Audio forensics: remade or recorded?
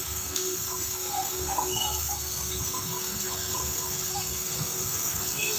remade